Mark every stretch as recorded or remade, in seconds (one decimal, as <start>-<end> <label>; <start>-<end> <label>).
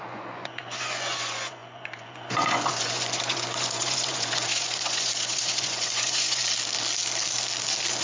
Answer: 0.0-6.4 remade; 6.4-8.0 recorded